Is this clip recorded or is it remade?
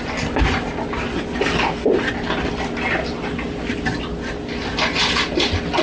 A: recorded